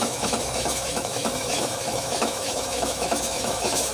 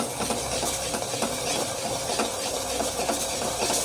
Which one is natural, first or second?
second